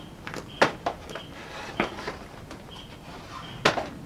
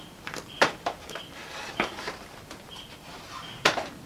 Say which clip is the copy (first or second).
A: second